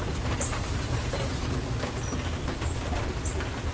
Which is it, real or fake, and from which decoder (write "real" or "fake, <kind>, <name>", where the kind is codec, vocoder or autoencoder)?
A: real